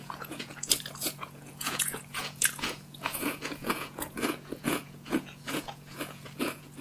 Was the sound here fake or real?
fake